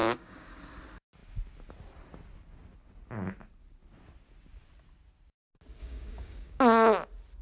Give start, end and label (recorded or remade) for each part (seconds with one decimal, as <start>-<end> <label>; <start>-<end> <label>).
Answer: 0.0-0.6 remade; 0.6-5.8 recorded; 5.8-6.6 remade; 6.6-7.4 recorded